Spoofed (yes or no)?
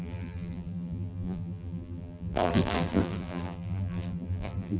yes